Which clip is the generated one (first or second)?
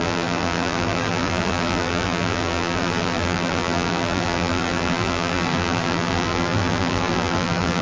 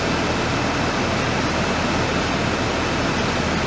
first